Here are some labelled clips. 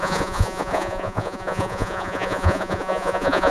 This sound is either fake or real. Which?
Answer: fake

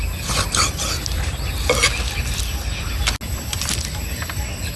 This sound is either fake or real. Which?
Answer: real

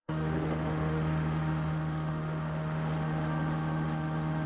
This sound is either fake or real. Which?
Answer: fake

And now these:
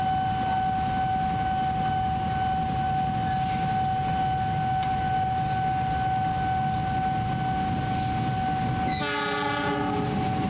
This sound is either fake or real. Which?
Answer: real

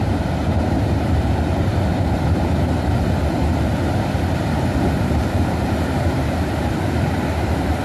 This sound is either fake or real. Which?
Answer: fake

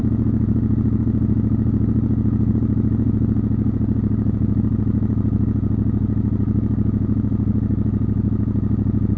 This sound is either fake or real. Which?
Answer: fake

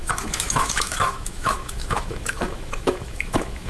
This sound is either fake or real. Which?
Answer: fake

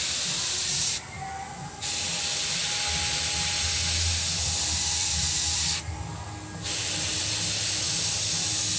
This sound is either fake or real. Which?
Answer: real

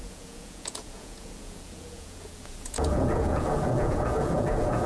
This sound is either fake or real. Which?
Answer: fake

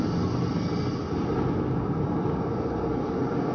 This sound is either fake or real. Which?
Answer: real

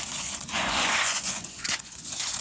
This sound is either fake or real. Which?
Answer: fake